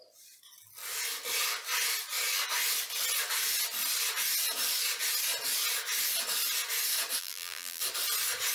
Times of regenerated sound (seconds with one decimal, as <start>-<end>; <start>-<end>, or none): 7.2-7.8